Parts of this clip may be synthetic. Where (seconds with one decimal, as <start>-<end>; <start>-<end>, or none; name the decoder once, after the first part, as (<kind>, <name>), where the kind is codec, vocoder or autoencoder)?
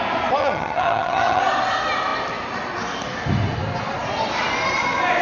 0.4-1.4 (vocoder, HiFi-GAN)